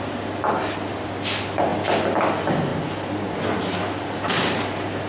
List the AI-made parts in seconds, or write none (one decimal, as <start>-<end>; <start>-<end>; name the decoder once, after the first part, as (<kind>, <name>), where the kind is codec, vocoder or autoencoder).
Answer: none